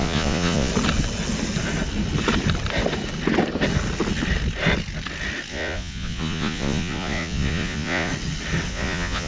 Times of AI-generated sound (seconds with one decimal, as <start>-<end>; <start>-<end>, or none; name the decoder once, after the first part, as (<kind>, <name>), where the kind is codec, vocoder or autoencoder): 0.0-0.7 (vocoder, Vocos); 5.5-8.1; 8.7-9.3